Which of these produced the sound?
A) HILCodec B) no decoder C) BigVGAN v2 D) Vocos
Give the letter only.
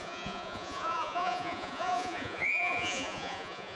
D